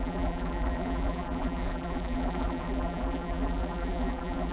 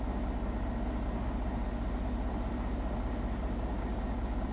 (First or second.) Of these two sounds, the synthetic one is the first